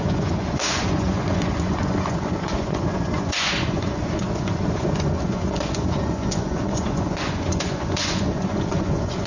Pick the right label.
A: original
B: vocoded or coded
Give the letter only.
B